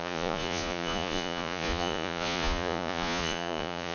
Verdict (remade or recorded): remade